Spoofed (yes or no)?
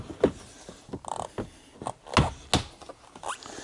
no